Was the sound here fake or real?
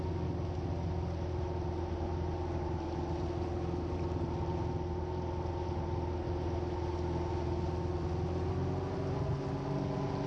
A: real